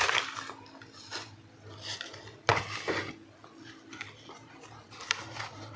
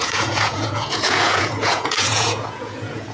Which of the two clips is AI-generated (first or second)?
second